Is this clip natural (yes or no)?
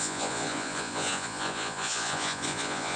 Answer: no